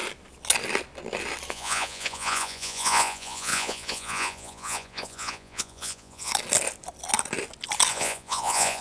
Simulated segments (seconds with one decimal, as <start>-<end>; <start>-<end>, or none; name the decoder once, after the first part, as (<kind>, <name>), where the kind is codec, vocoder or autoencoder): 1.5-6.3 (vocoder, Vocos); 7.9-8.8